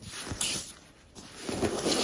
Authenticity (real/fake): fake